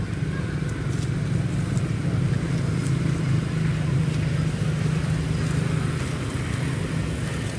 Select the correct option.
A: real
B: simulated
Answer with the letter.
A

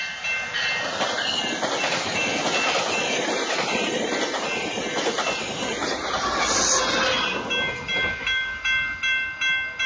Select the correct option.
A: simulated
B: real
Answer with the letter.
B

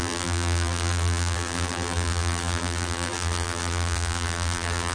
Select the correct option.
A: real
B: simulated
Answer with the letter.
B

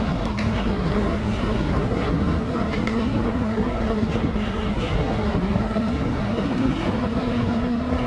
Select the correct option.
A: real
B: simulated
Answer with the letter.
B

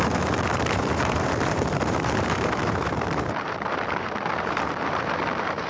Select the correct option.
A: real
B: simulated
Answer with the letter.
B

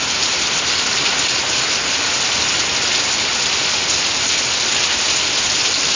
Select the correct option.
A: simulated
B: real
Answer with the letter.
B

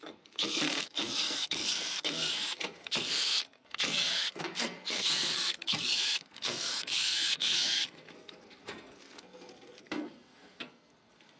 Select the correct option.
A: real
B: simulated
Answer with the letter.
B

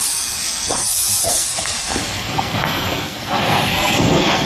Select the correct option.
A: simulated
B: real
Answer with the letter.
A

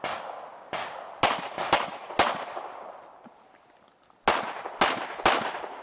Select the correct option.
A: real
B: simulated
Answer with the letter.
A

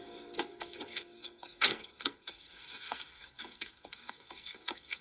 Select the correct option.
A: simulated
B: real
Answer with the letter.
A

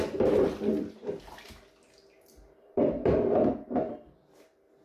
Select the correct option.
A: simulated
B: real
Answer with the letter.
B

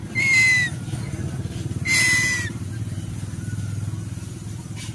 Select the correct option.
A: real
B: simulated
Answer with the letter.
A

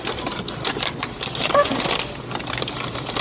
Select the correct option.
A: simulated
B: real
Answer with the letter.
B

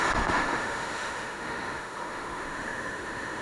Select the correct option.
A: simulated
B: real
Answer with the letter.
A